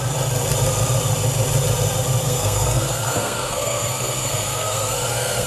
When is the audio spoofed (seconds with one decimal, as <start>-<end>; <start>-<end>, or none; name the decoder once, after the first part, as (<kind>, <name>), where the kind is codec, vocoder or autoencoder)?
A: 2.2-5.5 (codec, SNAC)